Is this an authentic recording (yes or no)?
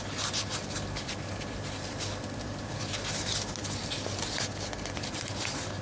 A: yes